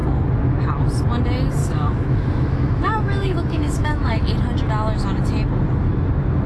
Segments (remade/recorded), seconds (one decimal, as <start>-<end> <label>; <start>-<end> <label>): 0.0-1.6 recorded; 1.6-4.2 remade; 4.2-6.5 recorded